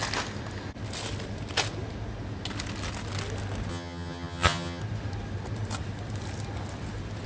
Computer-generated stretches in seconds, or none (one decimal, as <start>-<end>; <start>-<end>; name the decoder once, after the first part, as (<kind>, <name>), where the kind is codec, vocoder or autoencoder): 3.7-4.8 (vocoder, HiFi-GAN)

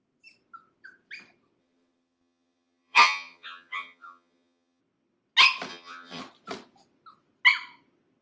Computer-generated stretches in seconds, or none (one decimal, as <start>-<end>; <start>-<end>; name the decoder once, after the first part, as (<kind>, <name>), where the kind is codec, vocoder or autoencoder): 1.6-4.8 (vocoder, HiFi-GAN); 5.7-6.2

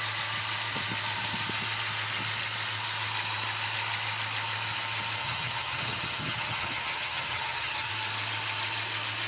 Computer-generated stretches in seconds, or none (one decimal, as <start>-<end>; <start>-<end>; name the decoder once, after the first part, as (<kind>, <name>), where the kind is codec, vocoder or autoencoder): 5.2-7.9 (vocoder, HiFi-GAN)

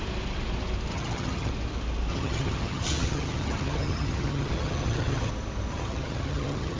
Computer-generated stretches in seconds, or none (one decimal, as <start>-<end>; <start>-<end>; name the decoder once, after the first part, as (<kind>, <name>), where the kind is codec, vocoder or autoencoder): 0.9-1.5 (vocoder, HiFi-GAN); 2.1-5.3; 5.7-6.8

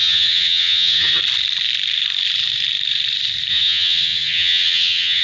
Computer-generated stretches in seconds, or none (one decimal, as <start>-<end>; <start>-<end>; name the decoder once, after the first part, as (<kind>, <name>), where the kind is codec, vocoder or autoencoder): 0.0-1.2 (vocoder, HiFi-GAN); 3.5-5.2